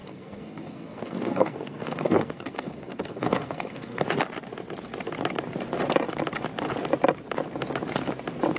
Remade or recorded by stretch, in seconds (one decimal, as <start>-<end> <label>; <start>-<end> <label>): 0.0-4.0 remade; 4.0-8.6 recorded